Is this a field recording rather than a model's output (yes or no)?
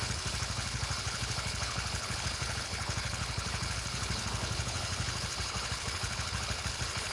no